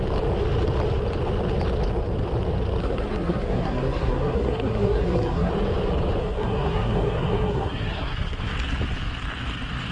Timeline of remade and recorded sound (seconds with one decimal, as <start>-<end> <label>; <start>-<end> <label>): 0.0-2.8 recorded; 2.8-5.5 remade; 5.5-6.2 recorded; 6.2-8.5 remade; 8.5-9.9 recorded